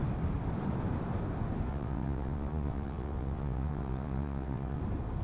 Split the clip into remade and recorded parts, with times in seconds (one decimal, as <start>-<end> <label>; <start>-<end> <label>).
0.0-1.7 recorded; 1.7-4.8 remade; 4.8-5.2 recorded